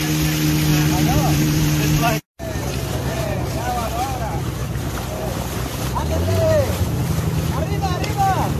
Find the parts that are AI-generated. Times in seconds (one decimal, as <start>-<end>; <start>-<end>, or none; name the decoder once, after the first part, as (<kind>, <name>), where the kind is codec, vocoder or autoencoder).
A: 0.7-2.1 (vocoder, BigVGAN v2); 4.6-7.0

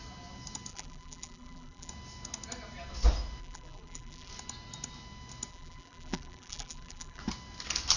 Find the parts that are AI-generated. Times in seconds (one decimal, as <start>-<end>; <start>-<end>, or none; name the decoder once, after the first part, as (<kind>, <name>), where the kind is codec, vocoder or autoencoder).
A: 0.7-1.9 (vocoder, BigVGAN v2); 3.4-4.3; 5.5-7.2

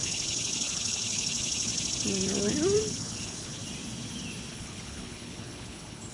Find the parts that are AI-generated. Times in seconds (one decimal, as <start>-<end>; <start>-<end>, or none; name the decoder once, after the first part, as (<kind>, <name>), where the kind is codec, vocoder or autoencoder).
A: 0.0-1.7 (codec, HILCodec); 2.8-3.6; 4.5-6.1

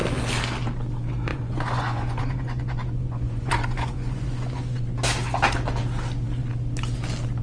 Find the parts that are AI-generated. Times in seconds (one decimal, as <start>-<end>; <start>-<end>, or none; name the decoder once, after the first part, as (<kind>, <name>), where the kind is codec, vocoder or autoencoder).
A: 1.3-4.8 (vocoder, Vocos)

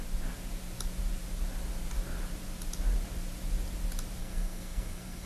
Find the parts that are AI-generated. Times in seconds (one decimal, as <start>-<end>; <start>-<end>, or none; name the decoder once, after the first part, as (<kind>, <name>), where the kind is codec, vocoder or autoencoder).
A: 4.2-5.3 (codec, SNAC)

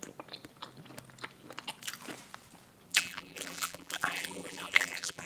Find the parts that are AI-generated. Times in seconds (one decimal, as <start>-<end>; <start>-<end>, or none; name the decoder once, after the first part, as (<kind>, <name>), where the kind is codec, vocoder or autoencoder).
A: 2.9-5.3 (vocoder, BigVGAN v2)

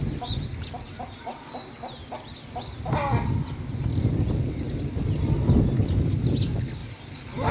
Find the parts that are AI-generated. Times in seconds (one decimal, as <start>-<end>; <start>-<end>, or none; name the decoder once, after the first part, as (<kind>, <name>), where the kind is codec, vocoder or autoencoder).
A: none